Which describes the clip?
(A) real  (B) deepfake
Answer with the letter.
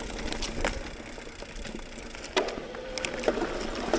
A